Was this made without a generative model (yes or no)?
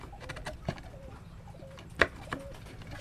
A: yes